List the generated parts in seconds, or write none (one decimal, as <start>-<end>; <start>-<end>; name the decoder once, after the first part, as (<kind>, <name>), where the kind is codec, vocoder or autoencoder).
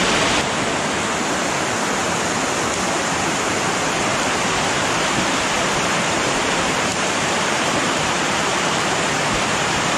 3.0-4.1 (vocoder, BigVGAN v2); 5.7-10.0